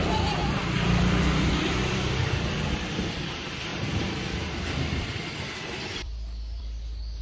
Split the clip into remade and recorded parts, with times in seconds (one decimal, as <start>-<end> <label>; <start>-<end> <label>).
0.0-7.2 remade